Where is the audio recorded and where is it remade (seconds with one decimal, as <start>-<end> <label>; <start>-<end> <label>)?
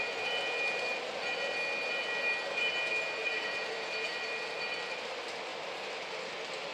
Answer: 0.0-3.2 recorded; 3.2-3.9 remade; 3.9-6.7 recorded